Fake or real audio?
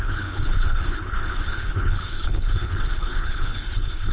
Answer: fake